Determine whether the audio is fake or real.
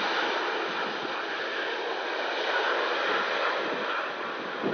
real